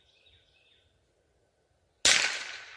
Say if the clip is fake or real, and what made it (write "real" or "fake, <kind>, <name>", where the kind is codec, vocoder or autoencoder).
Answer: real